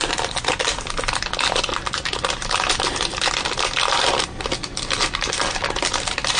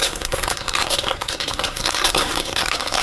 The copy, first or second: second